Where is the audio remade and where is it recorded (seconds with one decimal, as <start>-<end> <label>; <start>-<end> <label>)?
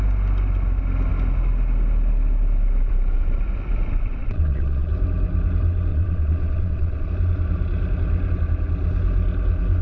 0.0-4.2 recorded; 4.2-4.9 remade; 4.9-5.9 recorded; 5.9-7.1 remade; 7.1-9.8 recorded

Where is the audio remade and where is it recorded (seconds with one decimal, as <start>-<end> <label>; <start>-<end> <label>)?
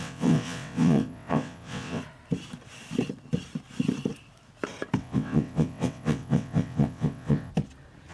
0.0-2.0 remade; 2.0-5.0 recorded; 5.0-7.5 remade; 7.5-8.1 recorded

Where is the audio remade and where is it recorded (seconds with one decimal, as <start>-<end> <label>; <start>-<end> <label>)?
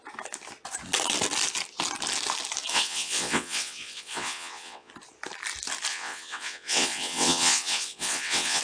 0.0-2.7 recorded; 2.7-4.9 remade; 4.9-5.9 recorded; 5.9-8.6 remade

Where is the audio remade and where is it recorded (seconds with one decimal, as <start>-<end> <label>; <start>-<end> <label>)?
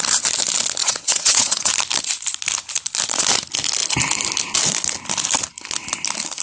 0.0-0.8 recorded; 0.8-1.7 remade; 1.7-6.4 recorded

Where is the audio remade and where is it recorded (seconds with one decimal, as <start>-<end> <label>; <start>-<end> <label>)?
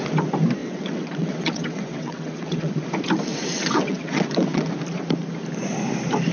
0.0-0.6 recorded; 0.6-2.7 remade; 2.7-3.3 recorded; 3.3-4.7 remade; 4.7-6.3 recorded